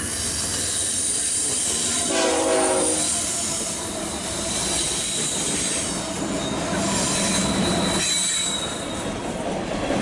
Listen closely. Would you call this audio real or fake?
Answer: real